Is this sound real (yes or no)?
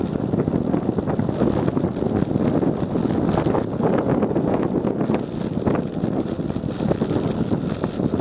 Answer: yes